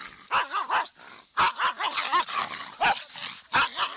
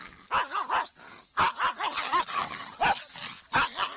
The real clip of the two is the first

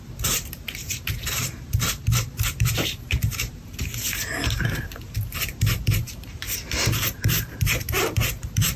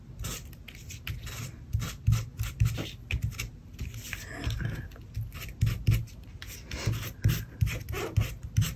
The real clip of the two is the second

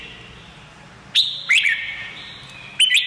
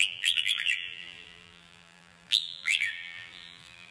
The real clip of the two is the first